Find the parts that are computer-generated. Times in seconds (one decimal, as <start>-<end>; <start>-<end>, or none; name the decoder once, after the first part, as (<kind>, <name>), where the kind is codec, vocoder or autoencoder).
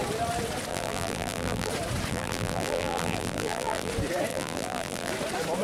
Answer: 0.7-1.7 (vocoder, BigVGAN v2); 2.1-3.9; 4.3-5.1